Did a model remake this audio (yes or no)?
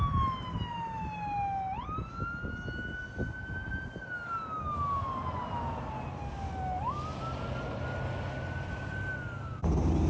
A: no